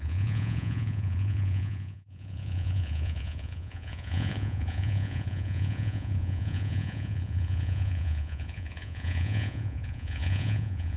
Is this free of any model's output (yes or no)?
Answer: no